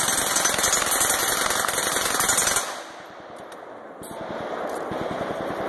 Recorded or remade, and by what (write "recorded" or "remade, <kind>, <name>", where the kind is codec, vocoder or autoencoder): recorded